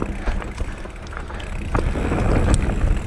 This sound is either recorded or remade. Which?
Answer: recorded